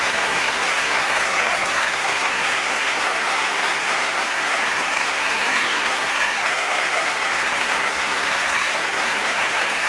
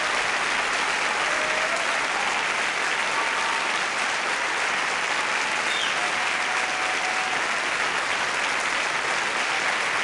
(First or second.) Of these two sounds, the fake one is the first